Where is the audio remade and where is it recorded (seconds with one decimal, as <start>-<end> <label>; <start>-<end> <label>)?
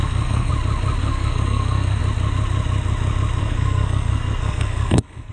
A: 0.0-0.5 remade; 0.5-1.0 recorded; 1.0-2.0 remade; 2.0-3.4 recorded; 3.4-5.3 remade